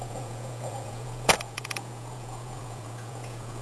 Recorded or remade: remade